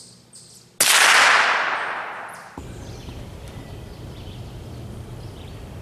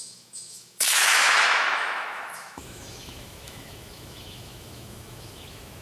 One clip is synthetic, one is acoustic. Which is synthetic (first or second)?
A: second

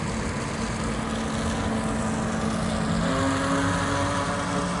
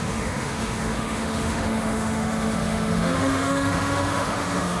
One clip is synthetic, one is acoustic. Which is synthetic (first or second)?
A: second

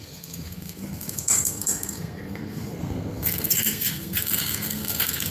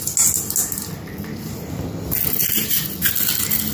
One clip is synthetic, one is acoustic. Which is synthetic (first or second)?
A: first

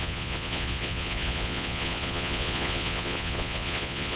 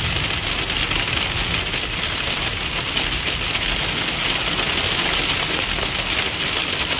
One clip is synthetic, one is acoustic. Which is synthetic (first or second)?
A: first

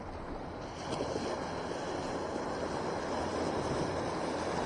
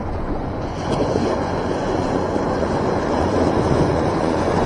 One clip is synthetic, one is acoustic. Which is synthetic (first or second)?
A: second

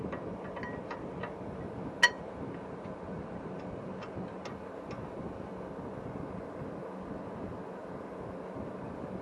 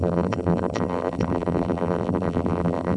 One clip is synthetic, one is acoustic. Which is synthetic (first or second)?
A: second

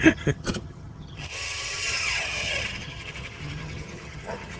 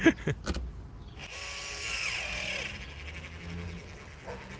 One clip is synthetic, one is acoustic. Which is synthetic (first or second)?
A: first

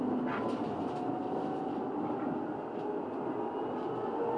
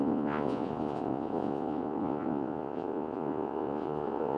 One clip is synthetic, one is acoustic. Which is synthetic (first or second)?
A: second